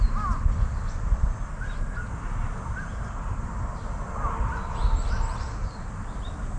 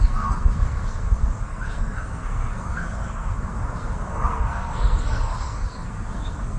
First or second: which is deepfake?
second